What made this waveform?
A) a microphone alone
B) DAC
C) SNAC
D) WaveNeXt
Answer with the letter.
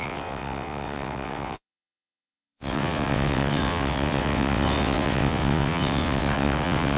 D